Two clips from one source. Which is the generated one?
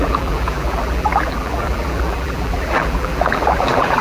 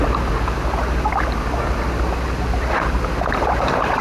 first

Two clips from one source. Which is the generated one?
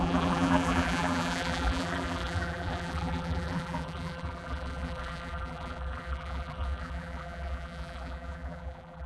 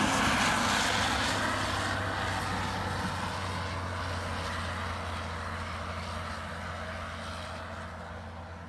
first